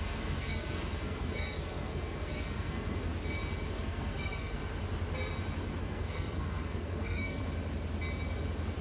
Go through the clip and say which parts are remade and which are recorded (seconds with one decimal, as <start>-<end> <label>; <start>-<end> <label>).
0.0-3.1 remade; 3.1-3.7 recorded; 3.7-4.6 remade; 4.6-5.8 recorded; 5.8-7.4 remade; 7.4-8.8 recorded

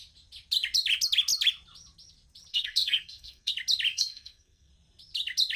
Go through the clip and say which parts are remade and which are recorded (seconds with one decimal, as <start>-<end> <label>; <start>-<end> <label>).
0.0-2.5 recorded; 2.5-3.5 remade; 3.5-3.9 recorded; 3.9-4.7 remade; 4.7-5.6 recorded

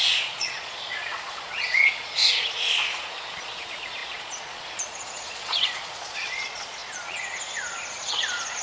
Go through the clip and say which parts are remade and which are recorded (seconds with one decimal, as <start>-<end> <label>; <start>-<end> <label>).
0.0-8.6 remade

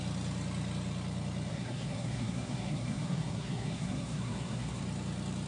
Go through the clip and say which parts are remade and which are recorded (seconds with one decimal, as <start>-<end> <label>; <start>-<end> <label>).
0.0-1.5 recorded; 1.5-4.8 remade; 4.8-5.5 recorded

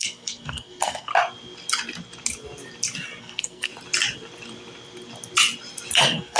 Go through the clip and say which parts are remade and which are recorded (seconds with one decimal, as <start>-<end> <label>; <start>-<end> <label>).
0.0-1.1 remade; 1.1-3.2 recorded; 3.2-3.7 remade; 3.7-6.0 recorded; 6.0-6.4 remade